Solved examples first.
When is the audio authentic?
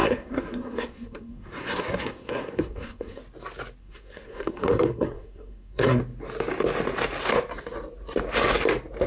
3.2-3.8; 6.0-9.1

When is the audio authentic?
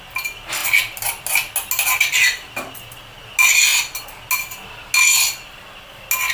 0.0-6.3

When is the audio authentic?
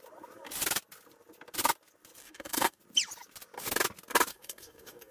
0.0-2.2; 2.8-4.3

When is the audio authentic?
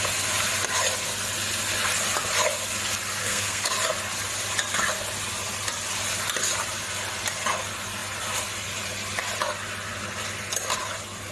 0.0-3.2; 3.7-11.3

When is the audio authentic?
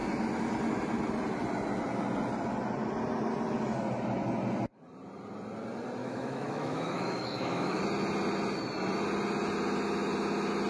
0.0-6.0; 7.8-10.7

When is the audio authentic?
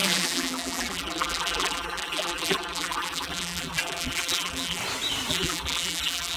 4.8-5.3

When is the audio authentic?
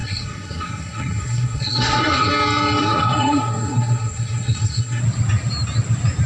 2.3-2.8; 5.0-6.3